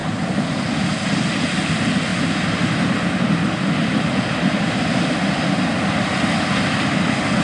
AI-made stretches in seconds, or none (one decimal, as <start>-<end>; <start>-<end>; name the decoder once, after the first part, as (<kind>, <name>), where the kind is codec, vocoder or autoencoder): none